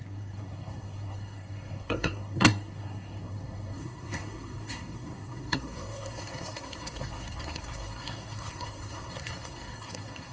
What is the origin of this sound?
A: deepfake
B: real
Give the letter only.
A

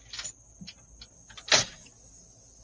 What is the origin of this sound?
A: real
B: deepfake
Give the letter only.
A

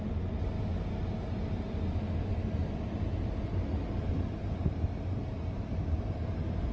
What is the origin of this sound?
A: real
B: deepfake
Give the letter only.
A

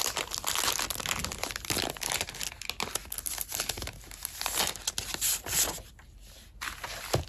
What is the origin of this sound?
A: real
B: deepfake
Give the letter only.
A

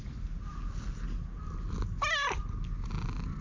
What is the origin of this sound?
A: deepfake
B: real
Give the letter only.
B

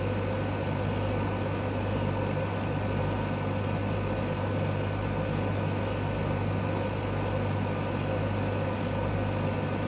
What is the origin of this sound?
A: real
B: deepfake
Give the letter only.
A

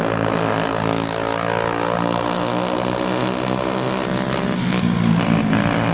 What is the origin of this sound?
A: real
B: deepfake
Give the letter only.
A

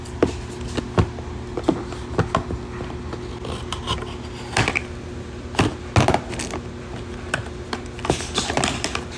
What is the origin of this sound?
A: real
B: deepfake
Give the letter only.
A